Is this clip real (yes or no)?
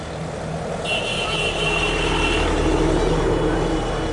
yes